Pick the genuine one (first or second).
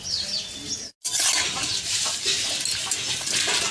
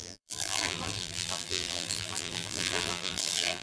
first